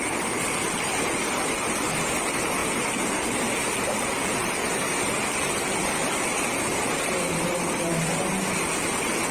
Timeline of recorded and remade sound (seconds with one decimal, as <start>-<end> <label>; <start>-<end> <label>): 0.0-9.3 recorded